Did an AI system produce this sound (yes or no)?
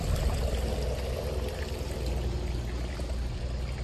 no